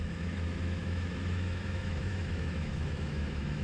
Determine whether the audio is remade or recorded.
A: remade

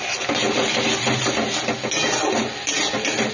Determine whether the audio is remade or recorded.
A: recorded